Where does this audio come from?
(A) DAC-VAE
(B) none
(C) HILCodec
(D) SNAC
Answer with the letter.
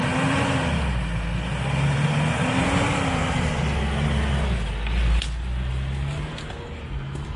B